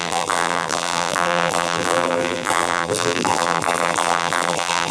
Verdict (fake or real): fake